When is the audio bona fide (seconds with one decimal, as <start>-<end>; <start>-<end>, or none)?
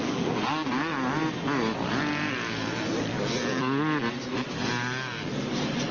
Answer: 0.0-5.9